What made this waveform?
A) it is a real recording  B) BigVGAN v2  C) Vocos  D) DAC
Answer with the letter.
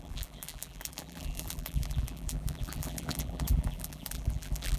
B